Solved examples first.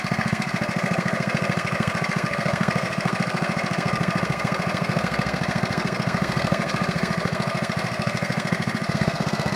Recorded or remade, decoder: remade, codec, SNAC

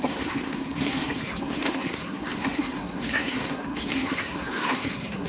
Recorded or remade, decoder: remade, codec, SNAC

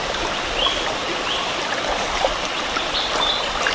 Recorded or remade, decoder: recorded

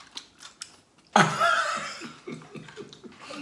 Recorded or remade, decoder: recorded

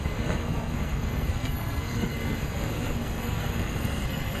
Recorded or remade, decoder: remade, codec, SNAC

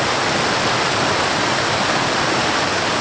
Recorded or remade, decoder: recorded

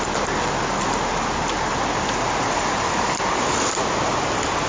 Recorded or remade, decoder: recorded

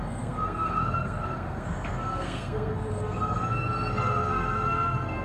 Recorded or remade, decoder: remade, codec, SNAC